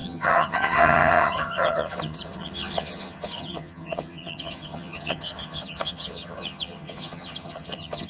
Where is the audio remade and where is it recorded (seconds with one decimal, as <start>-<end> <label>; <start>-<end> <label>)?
0.0-8.1 remade